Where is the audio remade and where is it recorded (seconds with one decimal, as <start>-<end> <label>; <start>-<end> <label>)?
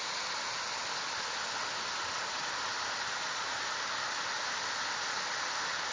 0.0-3.2 recorded; 3.2-3.7 remade; 3.7-5.9 recorded